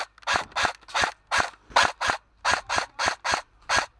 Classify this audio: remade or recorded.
recorded